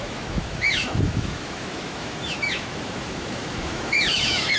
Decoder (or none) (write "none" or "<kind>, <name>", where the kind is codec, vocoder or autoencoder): autoencoder, DAC-VAE